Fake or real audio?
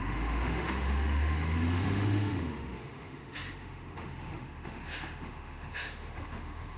fake